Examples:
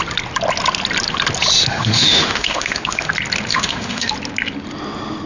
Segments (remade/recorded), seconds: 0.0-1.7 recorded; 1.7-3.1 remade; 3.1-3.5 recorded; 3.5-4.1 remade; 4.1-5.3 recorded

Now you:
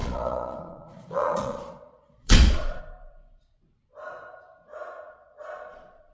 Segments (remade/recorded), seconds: 0.0-2.8 remade; 2.8-4.7 recorded; 4.7-6.1 remade

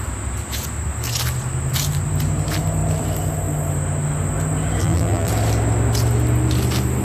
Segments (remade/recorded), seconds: 0.0-4.8 recorded; 4.8-5.3 remade; 5.3-7.0 recorded

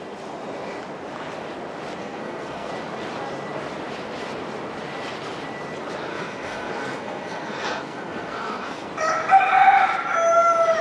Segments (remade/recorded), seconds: 0.0-2.0 recorded; 2.0-2.7 remade; 2.7-6.1 recorded; 6.1-8.9 remade; 8.9-10.8 recorded

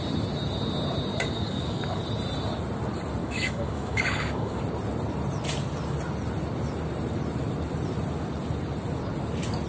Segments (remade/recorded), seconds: 0.0-1.1 recorded; 1.1-2.0 remade; 2.0-3.2 recorded; 3.2-4.6 remade; 4.6-9.7 recorded

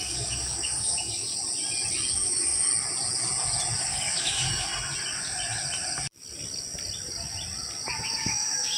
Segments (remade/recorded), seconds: 0.0-1.3 remade; 1.3-2.1 recorded; 2.1-2.7 remade; 2.7-3.8 recorded; 3.8-4.7 remade; 4.7-8.0 recorded; 8.0-8.8 remade

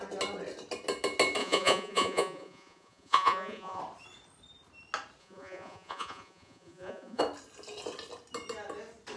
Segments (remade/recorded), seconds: 0.0-1.4 recorded; 1.4-3.8 remade; 3.8-5.2 recorded; 5.2-7.2 remade; 7.2-9.2 recorded